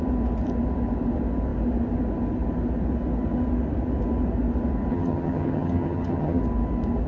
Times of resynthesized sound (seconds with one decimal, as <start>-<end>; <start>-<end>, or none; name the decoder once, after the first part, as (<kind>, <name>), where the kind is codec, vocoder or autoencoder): 4.9-6.4 (vocoder, HiFi-GAN)